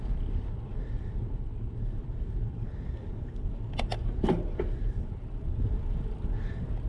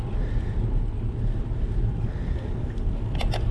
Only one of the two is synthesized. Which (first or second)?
first